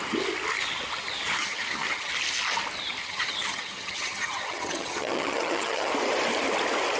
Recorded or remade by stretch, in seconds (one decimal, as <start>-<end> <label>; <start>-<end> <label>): 0.0-1.4 recorded; 1.4-2.1 remade; 2.1-3.0 recorded; 3.0-5.9 remade; 5.9-7.0 recorded